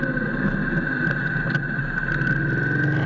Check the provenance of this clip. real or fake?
real